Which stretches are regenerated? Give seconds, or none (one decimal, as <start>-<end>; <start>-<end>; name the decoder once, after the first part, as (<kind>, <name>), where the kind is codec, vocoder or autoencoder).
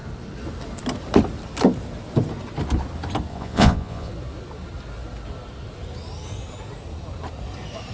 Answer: 3.3-4.1 (vocoder, Vocos)